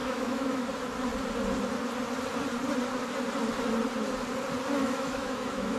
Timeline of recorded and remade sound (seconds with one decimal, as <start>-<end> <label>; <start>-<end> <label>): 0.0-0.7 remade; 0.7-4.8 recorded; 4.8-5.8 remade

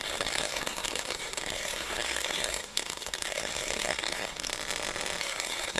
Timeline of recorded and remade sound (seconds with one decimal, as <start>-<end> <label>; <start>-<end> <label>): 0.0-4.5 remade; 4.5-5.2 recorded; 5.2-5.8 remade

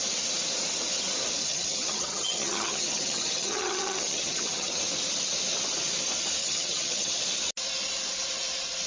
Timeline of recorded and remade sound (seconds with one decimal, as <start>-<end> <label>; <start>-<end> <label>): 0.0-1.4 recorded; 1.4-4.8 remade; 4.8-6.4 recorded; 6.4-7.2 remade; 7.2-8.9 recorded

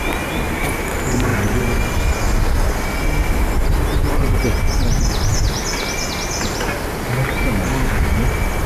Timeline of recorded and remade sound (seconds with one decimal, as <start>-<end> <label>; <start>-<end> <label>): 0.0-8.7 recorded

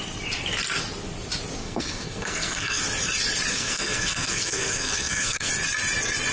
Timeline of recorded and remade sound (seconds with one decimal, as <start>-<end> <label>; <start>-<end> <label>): 0.0-1.6 recorded; 1.6-2.8 remade; 2.8-3.5 recorded; 3.5-5.5 remade; 5.5-6.3 recorded